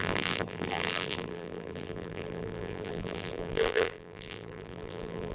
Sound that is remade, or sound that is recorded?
remade